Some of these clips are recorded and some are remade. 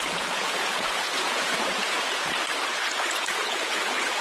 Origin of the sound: remade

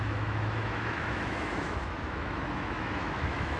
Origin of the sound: remade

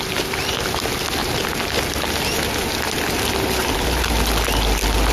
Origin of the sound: recorded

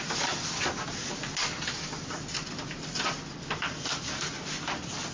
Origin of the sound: recorded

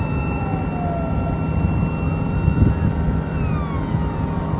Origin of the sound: recorded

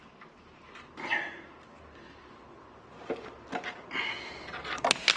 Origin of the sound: recorded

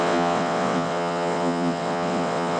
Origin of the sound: remade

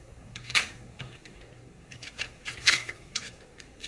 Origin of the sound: remade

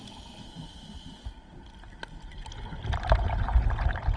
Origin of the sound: recorded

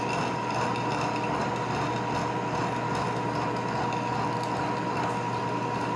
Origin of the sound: recorded